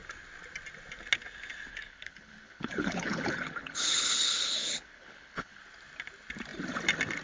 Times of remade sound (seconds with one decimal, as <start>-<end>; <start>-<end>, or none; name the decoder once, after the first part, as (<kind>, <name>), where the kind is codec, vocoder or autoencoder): 1.7-5.6 (codec, HILCodec)